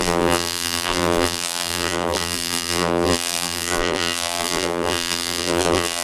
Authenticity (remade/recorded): remade